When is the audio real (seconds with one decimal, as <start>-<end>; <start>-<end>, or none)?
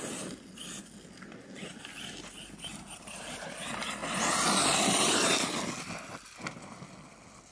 0.0-2.7; 3.5-7.5